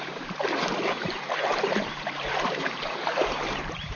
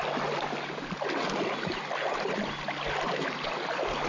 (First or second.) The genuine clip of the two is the second